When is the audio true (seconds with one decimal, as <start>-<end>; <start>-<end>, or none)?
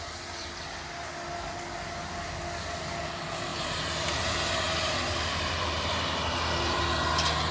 0.0-3.5; 6.8-7.5